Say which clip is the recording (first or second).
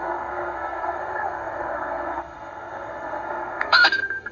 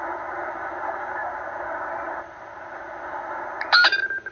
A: second